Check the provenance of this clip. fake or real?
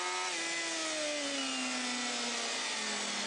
real